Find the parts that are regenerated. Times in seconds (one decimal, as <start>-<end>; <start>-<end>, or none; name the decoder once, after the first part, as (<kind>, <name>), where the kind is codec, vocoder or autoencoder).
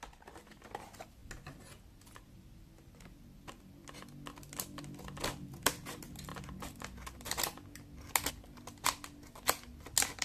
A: none